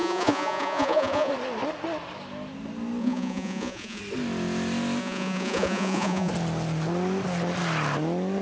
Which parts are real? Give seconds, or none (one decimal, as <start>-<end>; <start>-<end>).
1.3-3.0; 4.0-5.0; 6.3-8.4